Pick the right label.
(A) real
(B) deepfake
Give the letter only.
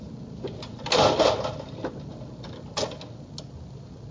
A